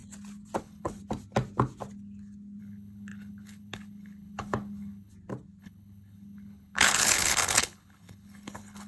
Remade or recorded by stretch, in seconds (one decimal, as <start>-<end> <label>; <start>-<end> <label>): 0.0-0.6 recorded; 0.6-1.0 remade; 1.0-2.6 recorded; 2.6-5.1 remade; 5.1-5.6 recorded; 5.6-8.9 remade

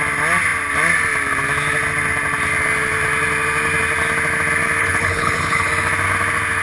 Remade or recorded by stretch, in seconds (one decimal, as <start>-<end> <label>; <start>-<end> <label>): 0.0-4.8 recorded; 4.8-5.7 remade; 5.7-6.6 recorded

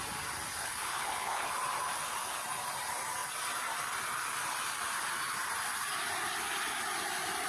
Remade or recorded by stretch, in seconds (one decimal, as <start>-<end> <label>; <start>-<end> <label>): 0.0-0.6 recorded; 0.6-1.5 remade; 1.5-7.5 recorded

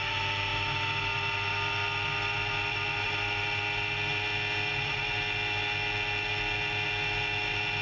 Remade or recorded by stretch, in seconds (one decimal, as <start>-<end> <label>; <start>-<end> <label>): 0.0-7.8 recorded

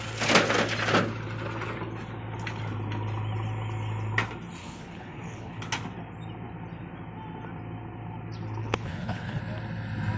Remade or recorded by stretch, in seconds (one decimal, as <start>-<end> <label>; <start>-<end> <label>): 0.0-4.6 recorded; 4.6-5.6 remade; 5.6-8.6 recorded; 8.6-9.4 remade; 9.4-10.2 recorded

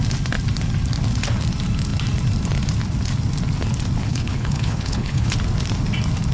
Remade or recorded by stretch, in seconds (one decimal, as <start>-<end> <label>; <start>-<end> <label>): 0.0-4.0 recorded; 4.0-5.3 remade; 5.3-6.3 recorded

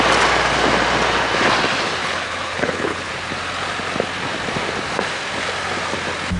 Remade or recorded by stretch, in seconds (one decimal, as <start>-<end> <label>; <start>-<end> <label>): 0.0-2.0 recorded; 2.0-3.1 remade; 3.1-6.4 recorded

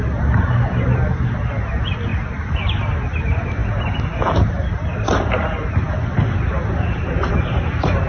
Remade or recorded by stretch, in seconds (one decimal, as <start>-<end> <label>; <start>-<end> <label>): 0.0-8.1 recorded